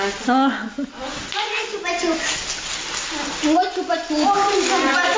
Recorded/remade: recorded